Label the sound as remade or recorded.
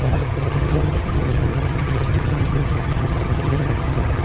remade